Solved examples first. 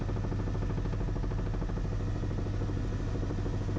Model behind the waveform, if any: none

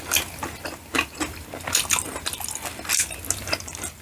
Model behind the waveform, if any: none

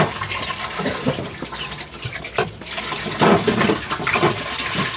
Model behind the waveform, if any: none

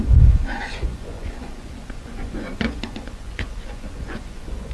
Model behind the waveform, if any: vocoder, Vocos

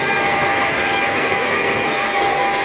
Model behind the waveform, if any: codec, SNAC